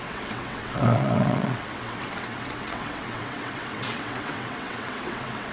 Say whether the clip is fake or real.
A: fake